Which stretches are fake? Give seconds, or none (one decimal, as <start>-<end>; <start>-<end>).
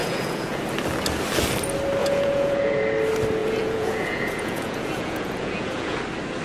0.0-0.6; 2.0-2.8; 3.4-6.0